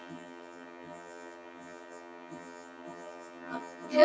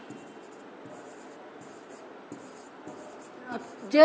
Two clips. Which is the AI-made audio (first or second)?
first